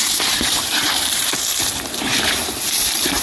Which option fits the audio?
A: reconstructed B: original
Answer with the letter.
A